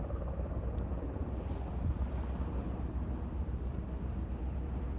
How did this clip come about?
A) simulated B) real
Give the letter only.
B